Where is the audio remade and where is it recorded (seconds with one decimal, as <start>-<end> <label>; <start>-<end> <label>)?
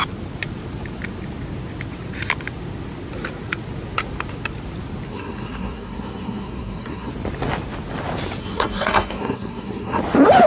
0.0-5.1 recorded; 5.1-7.1 remade; 7.1-8.4 recorded; 8.4-10.0 remade; 10.0-10.5 recorded